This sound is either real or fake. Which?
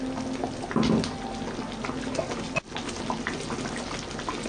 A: real